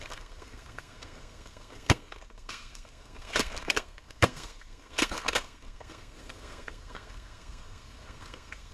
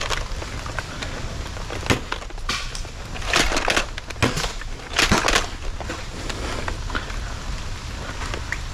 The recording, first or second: second